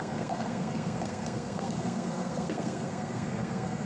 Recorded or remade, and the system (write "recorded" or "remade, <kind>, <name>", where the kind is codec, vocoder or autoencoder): remade, codec, SNAC